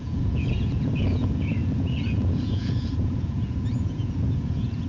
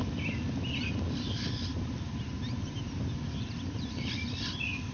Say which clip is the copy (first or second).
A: first